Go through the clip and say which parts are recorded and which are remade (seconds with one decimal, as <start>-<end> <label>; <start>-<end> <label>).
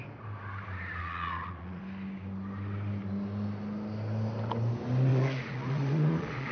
0.0-1.0 recorded; 1.0-1.8 remade; 1.8-5.1 recorded; 5.1-6.5 remade